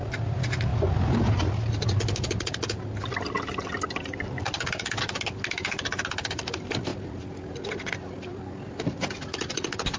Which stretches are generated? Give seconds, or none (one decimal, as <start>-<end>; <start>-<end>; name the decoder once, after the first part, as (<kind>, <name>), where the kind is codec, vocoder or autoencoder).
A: none